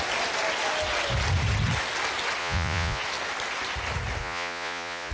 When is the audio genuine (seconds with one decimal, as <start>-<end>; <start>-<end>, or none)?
0.0-2.4; 3.0-4.2